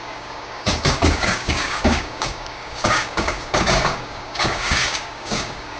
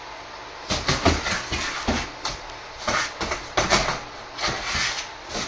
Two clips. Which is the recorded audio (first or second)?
second